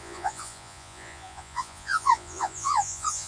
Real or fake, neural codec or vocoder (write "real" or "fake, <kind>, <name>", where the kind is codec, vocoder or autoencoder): fake, vocoder, Vocos